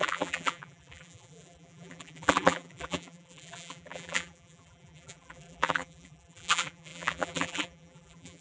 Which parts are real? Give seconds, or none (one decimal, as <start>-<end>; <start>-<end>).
none